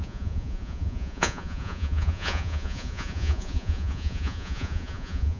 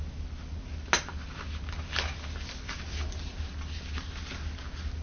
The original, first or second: second